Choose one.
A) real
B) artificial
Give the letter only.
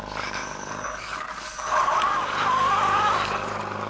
B